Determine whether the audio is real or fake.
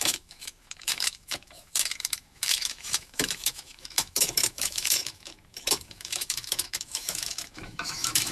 fake